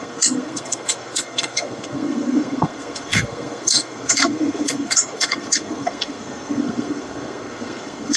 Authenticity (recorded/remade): remade